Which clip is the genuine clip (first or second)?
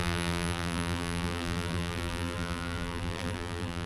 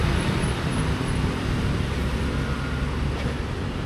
second